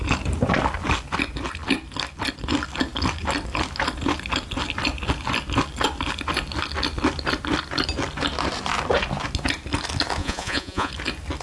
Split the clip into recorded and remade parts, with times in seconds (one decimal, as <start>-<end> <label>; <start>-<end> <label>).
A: 0.0-10.2 recorded; 10.2-10.9 remade; 10.9-11.4 recorded